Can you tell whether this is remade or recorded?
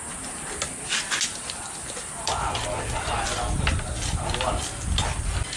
recorded